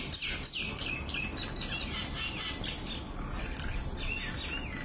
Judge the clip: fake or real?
real